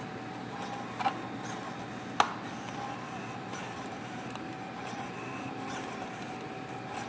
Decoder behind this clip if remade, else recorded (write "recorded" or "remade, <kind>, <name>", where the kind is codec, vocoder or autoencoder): recorded